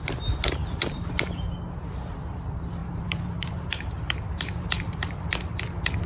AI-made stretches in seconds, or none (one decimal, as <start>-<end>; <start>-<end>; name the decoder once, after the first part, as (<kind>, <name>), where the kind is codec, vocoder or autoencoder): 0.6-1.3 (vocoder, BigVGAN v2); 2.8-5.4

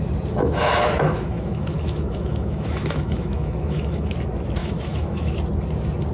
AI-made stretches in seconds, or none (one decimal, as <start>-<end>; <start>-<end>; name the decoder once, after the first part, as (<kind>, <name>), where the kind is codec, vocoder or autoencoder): 0.4-4.1 (autoencoder, DAC-VAE); 4.6-5.3

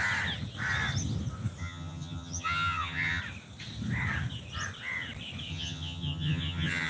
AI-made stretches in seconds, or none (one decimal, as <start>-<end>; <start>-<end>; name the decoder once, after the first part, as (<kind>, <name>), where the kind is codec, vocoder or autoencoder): 1.6-3.2 (vocoder, HiFi-GAN); 5.5-6.9

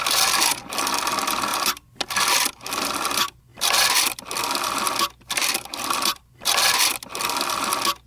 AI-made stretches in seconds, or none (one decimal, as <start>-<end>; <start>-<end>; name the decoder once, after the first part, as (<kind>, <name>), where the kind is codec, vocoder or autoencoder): 0.0-0.6 (vocoder, BigVGAN v2); 3.5-4.4; 5.4-6.2

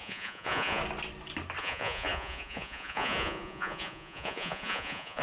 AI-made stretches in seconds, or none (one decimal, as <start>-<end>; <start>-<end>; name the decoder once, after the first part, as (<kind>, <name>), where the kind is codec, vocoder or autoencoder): 0.0-0.8 (vocoder, Vocos); 1.6-5.2